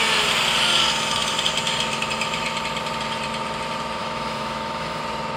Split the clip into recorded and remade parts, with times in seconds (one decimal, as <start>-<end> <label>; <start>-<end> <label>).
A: 0.0-4.0 recorded; 4.0-5.0 remade; 5.0-5.4 recorded